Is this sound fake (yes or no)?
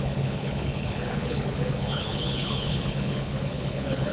yes